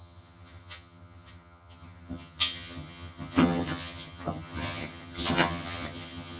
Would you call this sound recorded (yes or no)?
no